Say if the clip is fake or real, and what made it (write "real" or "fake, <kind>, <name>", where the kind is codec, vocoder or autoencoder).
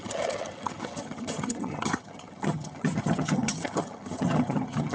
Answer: fake, vocoder, HiFi-GAN